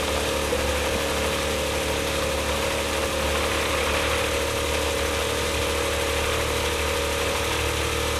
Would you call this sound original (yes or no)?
yes